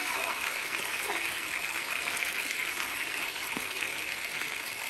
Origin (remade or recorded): remade